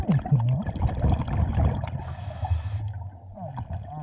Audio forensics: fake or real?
real